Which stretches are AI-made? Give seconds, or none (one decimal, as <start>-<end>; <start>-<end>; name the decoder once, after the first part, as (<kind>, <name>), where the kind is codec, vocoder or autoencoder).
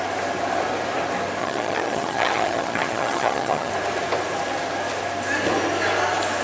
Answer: 1.4-3.7 (vocoder, HiFi-GAN)